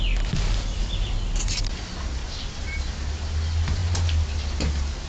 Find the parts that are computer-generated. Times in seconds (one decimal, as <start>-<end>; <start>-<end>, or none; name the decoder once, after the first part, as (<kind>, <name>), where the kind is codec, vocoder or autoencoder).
2.2-2.9 (vocoder, BigVGAN v2)